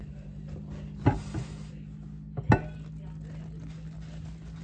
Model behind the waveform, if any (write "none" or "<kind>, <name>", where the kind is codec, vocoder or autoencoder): none